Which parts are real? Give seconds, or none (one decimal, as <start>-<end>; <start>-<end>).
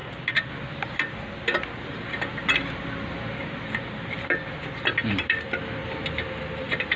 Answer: 0.0-1.8; 2.3-5.1; 5.8-6.6